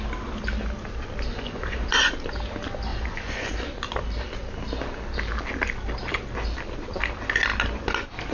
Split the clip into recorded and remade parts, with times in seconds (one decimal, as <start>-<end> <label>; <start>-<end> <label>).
0.0-1.3 recorded; 1.3-2.1 remade; 2.1-2.9 recorded; 2.9-3.5 remade; 3.5-8.3 recorded